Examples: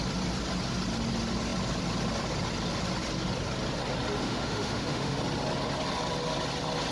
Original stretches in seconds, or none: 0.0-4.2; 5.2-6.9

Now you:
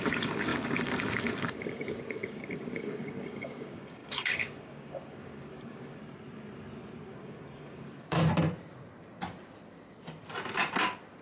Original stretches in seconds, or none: 6.0-7.1; 8.2-11.2

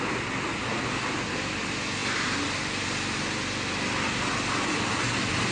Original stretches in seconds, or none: 0.0-5.5

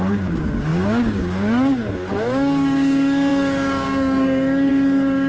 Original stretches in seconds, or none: none

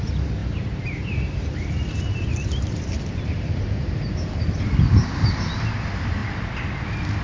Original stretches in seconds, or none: 0.0-0.4; 4.4-7.2

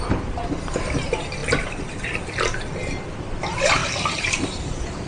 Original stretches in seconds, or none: 0.0-3.8

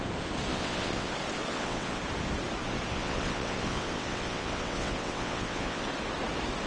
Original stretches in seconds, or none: 0.0-0.5; 1.1-1.5; 2.0-2.9; 5.8-6.7